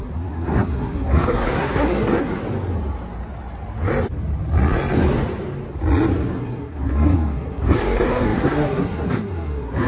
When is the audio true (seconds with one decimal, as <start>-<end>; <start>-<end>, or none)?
2.4-6.4